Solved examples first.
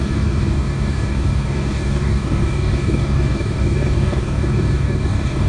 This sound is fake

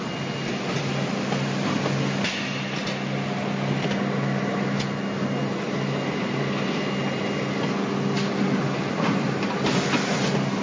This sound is real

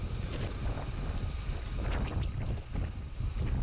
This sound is real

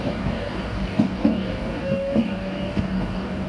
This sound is fake